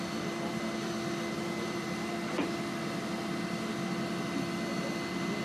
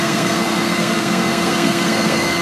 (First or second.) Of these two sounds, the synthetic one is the second